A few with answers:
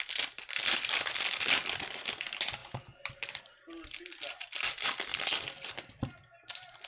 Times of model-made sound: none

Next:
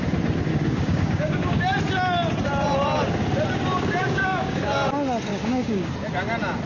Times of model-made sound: 0.5-1.6 (codec, DAC); 4.0-4.6; 5.3-5.9

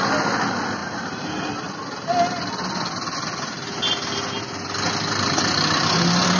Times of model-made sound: none

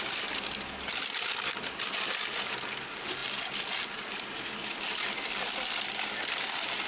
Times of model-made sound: none

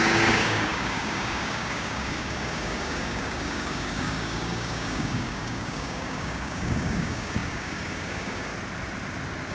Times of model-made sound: 0.0-8.5 (codec, DAC)